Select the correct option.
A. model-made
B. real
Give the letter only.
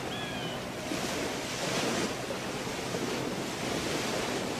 B